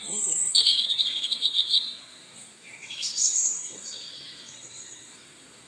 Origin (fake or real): fake